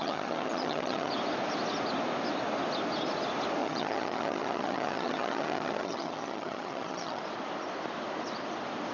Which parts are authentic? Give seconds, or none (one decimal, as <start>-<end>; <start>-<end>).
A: 1.1-3.6; 7.2-8.9